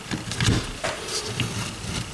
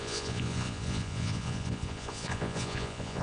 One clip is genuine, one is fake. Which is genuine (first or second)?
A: first